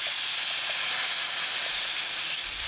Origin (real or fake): real